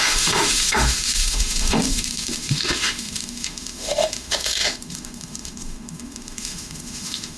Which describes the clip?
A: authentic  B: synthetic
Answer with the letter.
B